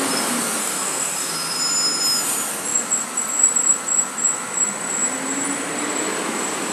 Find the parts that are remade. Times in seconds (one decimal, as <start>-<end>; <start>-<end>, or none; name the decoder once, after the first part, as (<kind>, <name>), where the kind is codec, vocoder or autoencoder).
0.6-1.3 (codec, DAC)